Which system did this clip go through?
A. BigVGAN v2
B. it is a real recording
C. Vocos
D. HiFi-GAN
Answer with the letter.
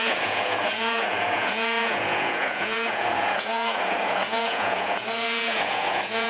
C